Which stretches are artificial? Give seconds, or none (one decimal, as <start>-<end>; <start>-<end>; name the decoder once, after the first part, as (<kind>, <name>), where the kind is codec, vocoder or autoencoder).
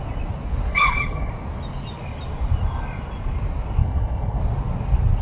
0.7-1.3 (codec, HILCodec); 3.8-4.4